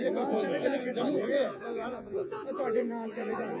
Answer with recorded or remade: remade